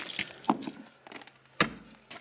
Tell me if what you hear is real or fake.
real